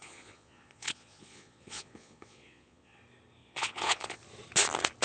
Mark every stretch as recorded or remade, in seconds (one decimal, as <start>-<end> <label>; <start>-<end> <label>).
0.0-3.0 remade; 3.0-3.4 recorded; 3.4-4.2 remade; 4.2-5.0 recorded